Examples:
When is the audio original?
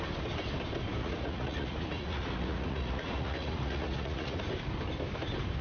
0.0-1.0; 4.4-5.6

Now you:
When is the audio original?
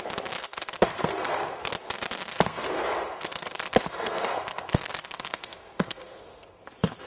0.0-0.4; 1.7-2.3; 6.6-7.1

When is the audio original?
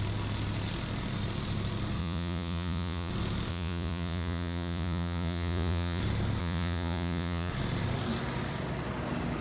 0.0-2.0; 3.1-3.5; 6.0-6.4; 7.5-9.4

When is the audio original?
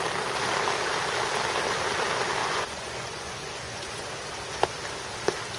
0.0-2.4; 4.1-5.6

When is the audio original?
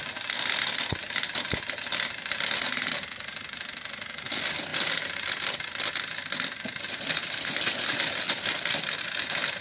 0.0-4.7; 5.9-9.6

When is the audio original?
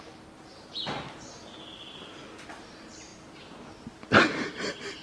0.0-5.0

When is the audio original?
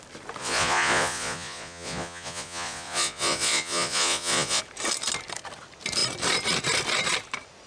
0.0-0.4; 4.6-7.7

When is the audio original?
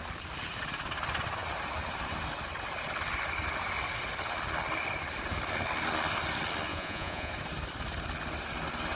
0.0-6.7; 7.3-9.0